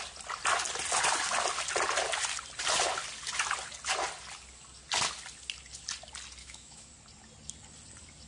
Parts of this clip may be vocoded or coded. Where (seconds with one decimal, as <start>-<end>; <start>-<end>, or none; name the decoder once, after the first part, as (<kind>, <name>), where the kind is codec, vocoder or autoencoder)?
6.4-6.9 (autoencoder, DAC-VAE)